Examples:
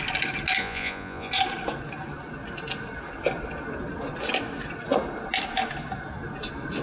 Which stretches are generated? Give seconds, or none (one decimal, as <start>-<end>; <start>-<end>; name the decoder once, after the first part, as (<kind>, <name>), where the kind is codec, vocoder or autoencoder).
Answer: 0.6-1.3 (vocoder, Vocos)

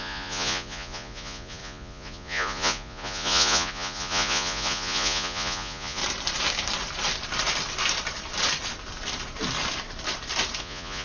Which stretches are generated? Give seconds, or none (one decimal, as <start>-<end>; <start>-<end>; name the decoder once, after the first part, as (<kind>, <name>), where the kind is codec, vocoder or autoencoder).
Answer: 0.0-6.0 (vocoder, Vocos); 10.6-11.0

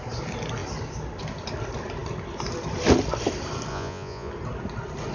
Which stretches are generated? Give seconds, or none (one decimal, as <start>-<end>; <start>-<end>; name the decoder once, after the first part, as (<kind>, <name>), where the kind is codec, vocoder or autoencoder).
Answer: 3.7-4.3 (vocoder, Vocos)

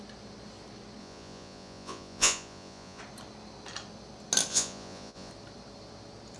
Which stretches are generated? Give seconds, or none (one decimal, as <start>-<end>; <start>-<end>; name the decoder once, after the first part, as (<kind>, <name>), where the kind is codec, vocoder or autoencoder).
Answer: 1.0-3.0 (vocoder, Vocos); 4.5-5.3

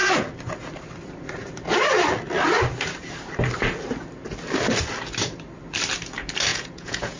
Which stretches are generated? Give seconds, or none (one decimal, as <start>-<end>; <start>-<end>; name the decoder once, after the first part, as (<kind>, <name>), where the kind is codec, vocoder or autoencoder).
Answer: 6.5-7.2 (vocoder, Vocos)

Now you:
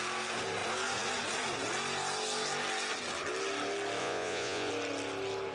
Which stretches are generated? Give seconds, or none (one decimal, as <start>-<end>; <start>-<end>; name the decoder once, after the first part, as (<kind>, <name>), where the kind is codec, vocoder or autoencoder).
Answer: 4.0-4.7 (vocoder, Vocos)

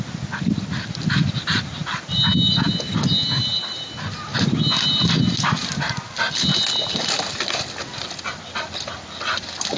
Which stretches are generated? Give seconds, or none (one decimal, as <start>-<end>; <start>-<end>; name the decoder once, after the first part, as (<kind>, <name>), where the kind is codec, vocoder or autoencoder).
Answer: none

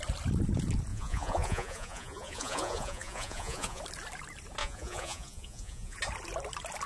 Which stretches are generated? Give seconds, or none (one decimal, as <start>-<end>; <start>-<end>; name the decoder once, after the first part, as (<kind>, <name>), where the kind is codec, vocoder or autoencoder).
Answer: 0.9-3.8 (vocoder, Vocos); 4.6-6.0